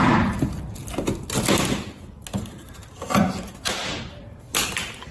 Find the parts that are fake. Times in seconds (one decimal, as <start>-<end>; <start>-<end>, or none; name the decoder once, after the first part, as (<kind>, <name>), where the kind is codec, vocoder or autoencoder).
none